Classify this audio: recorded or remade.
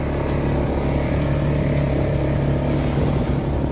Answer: recorded